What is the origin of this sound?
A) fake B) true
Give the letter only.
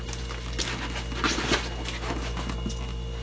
B